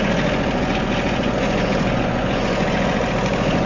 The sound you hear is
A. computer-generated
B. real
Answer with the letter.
A